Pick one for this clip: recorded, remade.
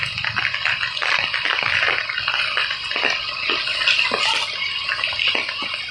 remade